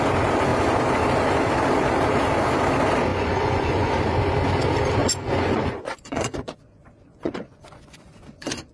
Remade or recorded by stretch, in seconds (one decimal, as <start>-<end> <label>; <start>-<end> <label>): 0.0-3.1 recorded; 3.1-3.9 remade; 3.9-5.0 recorded; 5.0-8.7 remade